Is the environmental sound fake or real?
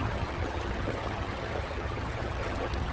fake